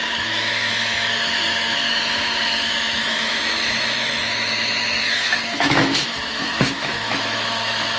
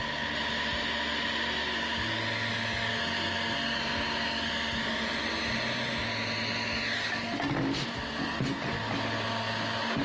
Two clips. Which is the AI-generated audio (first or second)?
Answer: first